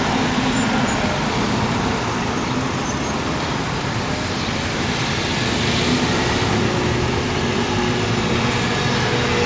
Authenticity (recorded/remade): recorded